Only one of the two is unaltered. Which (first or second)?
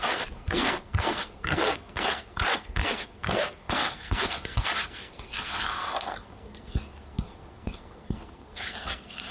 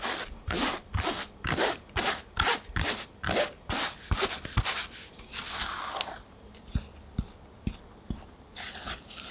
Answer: second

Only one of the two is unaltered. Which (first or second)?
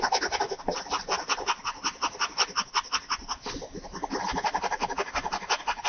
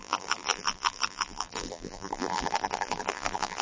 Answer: first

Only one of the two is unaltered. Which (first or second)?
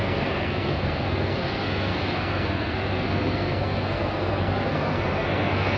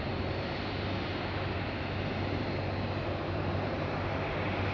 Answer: second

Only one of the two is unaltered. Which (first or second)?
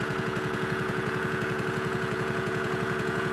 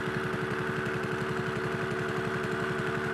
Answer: second